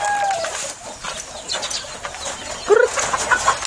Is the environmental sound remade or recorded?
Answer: recorded